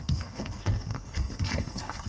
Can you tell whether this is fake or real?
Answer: fake